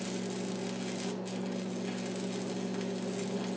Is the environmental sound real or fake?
real